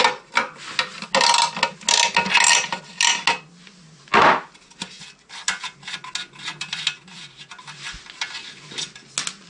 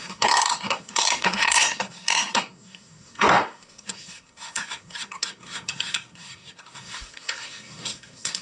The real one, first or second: first